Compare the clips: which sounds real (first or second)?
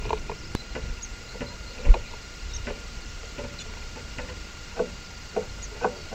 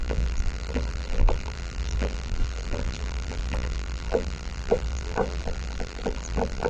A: first